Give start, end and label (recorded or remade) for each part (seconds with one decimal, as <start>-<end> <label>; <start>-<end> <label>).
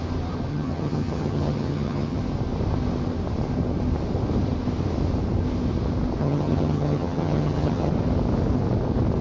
0.0-0.5 recorded; 0.5-2.2 remade; 2.2-6.2 recorded; 6.2-7.9 remade; 7.9-9.2 recorded